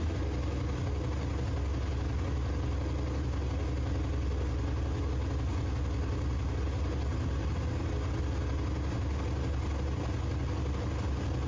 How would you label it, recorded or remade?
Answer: recorded